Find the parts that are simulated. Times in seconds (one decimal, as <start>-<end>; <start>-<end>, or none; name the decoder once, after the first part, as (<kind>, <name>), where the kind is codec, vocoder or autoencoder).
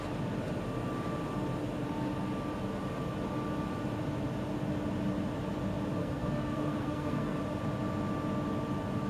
6.0-7.4 (codec, SNAC)